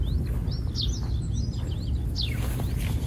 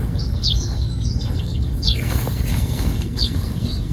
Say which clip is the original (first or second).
first